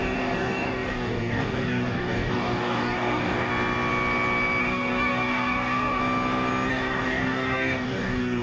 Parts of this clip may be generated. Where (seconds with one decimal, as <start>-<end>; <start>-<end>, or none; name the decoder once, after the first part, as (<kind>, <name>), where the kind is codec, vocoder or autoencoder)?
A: 0.0-3.5 (codec, DAC); 4.6-6.0; 6.7-8.4